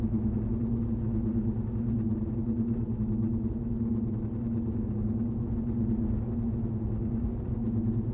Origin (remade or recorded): recorded